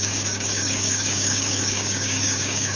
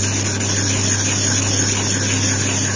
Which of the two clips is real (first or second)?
second